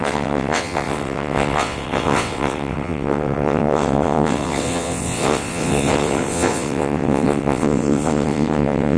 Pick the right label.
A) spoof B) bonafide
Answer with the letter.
A